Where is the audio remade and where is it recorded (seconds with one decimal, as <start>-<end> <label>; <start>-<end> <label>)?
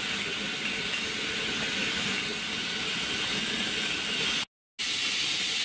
0.0-5.6 recorded